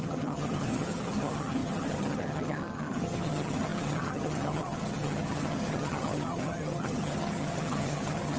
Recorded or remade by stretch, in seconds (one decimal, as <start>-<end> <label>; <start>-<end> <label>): 0.0-8.4 remade